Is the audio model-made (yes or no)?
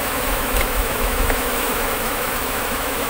yes